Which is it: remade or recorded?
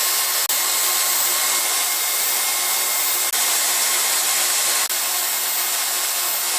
recorded